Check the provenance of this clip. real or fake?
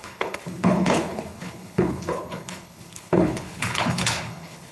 fake